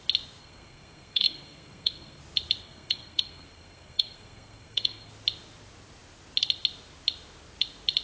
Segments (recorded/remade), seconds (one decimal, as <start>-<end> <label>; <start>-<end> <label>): 0.0-0.4 recorded; 0.4-2.2 remade; 2.2-2.6 recorded; 2.6-5.1 remade; 5.1-8.0 recorded